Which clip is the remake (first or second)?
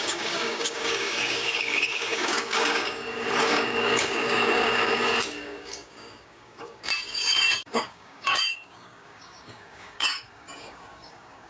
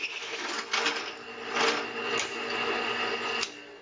first